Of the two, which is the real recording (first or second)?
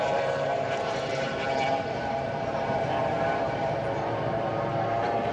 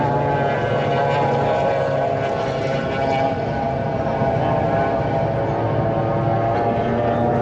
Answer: second